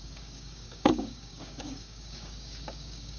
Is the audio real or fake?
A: fake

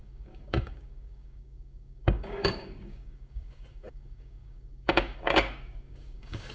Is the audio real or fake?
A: fake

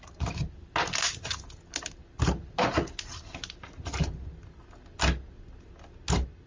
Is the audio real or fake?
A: real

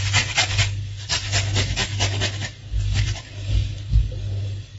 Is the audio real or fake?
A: fake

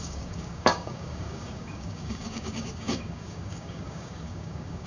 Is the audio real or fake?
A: fake